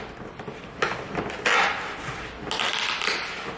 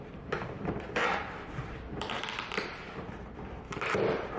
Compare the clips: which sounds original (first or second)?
first